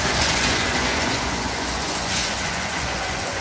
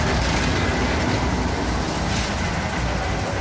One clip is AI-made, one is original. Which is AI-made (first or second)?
first